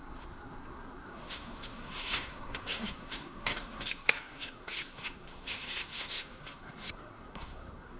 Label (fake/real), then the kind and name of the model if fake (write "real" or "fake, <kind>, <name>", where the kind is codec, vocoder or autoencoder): fake, codec, SNAC